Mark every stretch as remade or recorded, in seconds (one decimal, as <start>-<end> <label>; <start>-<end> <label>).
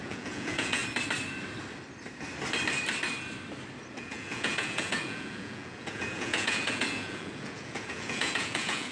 0.0-0.8 remade; 0.8-3.9 recorded; 3.9-8.9 remade